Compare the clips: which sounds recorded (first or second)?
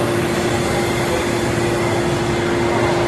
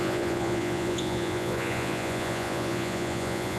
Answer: first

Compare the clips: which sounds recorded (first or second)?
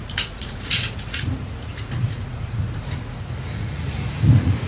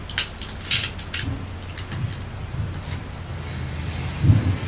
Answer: second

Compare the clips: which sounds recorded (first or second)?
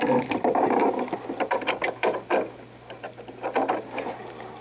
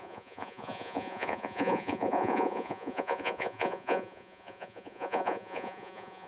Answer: first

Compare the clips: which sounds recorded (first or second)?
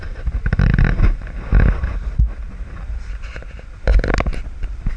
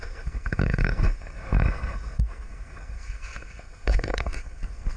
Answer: first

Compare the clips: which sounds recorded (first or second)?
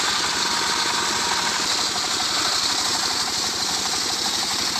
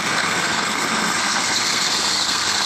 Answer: first